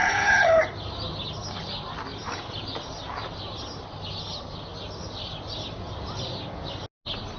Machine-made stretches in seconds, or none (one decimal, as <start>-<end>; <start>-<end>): 0.0-0.6